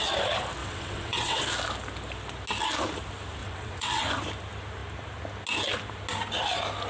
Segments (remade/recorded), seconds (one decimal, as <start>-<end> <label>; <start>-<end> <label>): 0.0-0.6 recorded; 0.6-1.4 remade; 1.4-3.4 recorded; 3.4-4.0 remade; 4.0-6.9 recorded